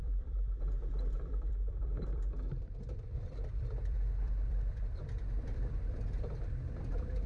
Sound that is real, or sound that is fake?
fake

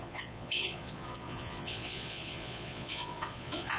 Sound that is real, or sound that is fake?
fake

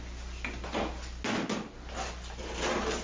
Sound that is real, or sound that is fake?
real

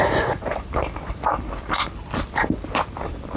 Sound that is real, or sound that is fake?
fake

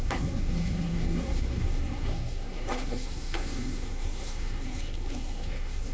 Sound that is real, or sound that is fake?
fake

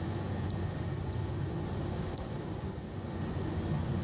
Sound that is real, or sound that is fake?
fake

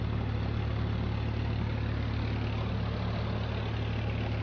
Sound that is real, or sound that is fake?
real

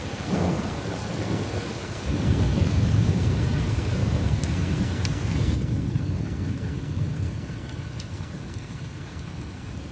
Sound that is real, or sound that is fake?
fake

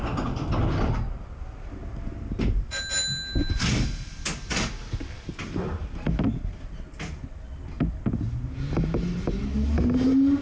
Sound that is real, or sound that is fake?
real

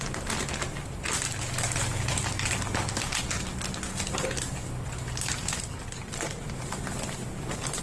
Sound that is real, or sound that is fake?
real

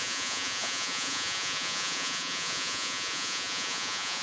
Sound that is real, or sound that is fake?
fake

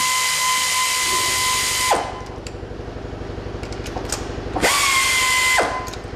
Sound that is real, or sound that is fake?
real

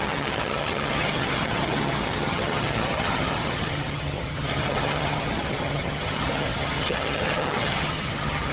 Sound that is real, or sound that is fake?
fake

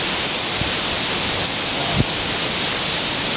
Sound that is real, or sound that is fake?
real